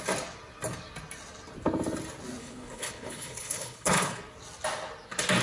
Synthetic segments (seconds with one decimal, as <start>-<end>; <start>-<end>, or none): 2.4-4.2